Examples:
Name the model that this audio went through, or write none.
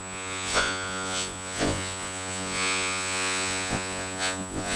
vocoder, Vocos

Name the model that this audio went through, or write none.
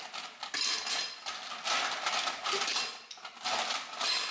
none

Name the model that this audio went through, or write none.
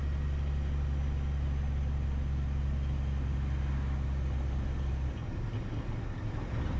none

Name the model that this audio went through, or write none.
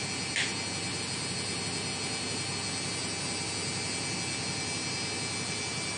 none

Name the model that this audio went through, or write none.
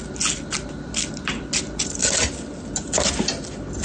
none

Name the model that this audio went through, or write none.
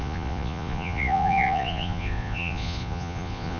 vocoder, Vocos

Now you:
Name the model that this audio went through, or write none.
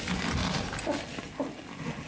none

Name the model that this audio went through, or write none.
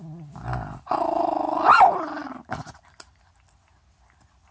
none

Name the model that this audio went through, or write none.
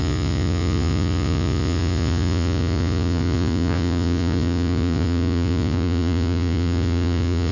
vocoder, Vocos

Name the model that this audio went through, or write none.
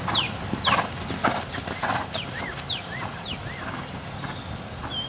none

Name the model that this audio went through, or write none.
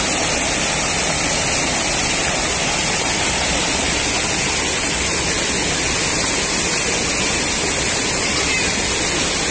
none